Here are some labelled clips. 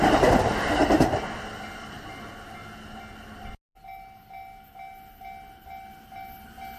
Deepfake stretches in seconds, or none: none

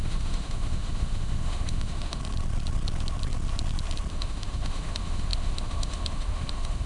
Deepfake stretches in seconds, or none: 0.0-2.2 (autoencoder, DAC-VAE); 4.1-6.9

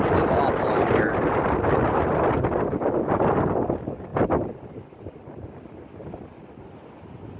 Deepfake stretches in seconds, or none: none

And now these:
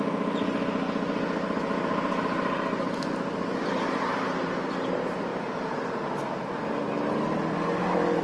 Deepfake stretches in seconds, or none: 5.3-5.9 (vocoder, BigVGAN v2)

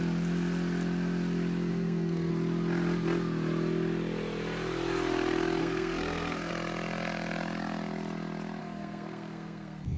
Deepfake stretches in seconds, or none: 1.7-2.3 (codec, SNAC); 5.6-6.5; 8.6-10.0